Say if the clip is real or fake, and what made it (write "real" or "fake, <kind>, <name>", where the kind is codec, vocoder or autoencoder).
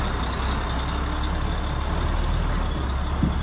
real